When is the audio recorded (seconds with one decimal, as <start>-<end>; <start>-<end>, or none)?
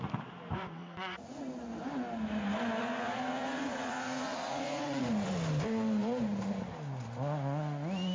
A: 0.0-0.8; 1.4-2.8; 5.0-8.1